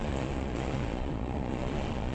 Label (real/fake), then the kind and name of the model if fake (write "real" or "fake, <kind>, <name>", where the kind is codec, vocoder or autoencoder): fake, vocoder, Vocos